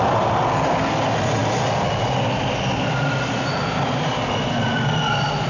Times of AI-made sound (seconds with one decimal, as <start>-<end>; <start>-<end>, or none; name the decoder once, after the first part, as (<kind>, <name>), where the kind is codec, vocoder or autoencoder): none